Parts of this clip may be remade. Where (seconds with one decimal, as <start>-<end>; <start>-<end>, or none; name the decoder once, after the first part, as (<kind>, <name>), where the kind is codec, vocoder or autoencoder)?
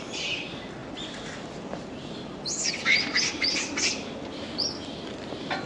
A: 0.8-1.9 (vocoder, BigVGAN v2)